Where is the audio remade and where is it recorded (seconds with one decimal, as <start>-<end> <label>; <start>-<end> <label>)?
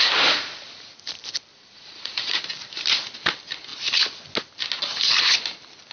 0.0-1.5 recorded; 1.5-2.4 remade; 2.4-5.9 recorded